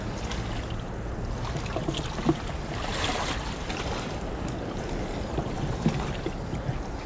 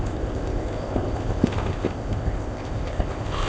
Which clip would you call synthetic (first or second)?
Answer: second